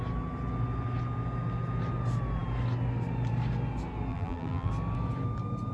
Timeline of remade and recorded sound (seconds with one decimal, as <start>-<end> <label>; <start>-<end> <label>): 0.0-4.1 recorded; 4.1-4.7 remade; 4.7-5.7 recorded